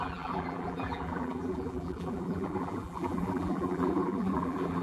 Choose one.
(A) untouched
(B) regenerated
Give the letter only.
B